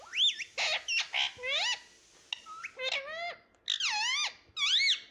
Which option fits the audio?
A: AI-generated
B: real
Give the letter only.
B